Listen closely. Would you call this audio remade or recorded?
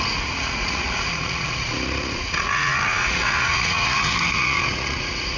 remade